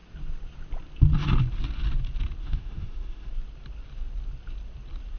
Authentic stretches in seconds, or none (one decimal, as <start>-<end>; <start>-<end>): 0.0-2.4; 3.3-5.2